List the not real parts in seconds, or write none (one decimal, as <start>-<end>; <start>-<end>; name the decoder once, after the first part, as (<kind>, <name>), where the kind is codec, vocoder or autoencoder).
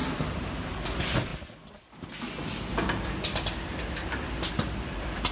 0.0-0.7 (vocoder, BigVGAN v2)